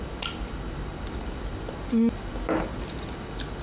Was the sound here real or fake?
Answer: real